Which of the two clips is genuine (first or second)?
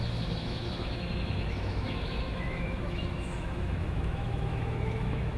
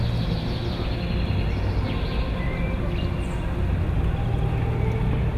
second